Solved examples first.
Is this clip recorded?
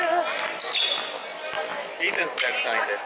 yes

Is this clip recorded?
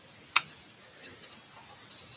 yes